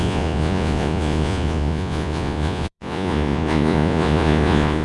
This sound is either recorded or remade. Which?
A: remade